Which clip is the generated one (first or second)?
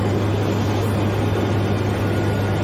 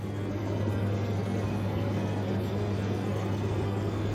second